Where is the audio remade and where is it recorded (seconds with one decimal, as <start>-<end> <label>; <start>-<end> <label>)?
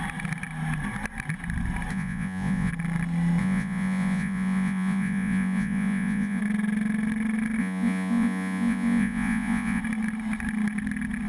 0.0-1.9 recorded; 1.9-2.7 remade; 2.7-3.4 recorded; 3.4-6.4 remade; 6.4-7.6 recorded; 7.6-9.8 remade; 9.8-11.3 recorded